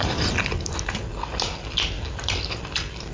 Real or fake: real